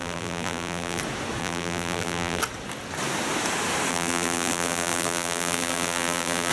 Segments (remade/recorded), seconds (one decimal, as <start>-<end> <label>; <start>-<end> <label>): 0.0-1.0 remade; 1.0-1.4 recorded; 1.4-2.4 remade; 2.4-3.9 recorded; 3.9-6.5 remade